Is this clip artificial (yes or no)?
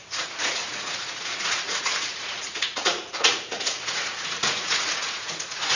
yes